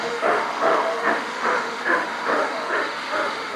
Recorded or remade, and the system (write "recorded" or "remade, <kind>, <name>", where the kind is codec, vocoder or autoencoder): remade, autoencoder, DAC-VAE